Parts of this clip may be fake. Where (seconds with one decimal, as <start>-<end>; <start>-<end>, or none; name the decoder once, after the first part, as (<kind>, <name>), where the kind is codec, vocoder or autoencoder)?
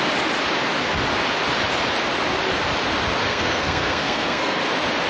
3.3-4.6 (codec, SNAC)